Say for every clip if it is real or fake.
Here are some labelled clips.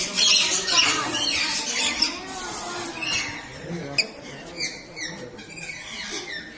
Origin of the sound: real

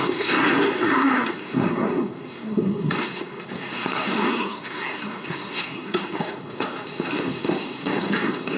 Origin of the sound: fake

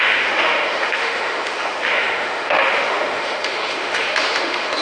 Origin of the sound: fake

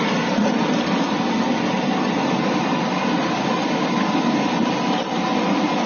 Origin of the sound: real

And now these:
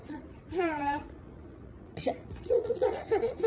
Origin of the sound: fake